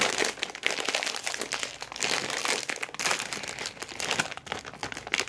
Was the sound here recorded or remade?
recorded